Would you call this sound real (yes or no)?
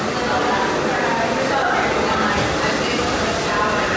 yes